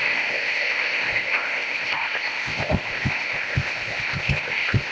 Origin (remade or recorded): remade